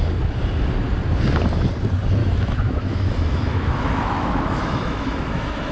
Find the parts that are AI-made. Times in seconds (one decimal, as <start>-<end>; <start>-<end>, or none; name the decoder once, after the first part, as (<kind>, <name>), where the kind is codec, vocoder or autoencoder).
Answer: 2.2-5.7 (autoencoder, DAC-VAE)